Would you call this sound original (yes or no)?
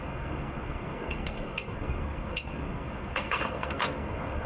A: no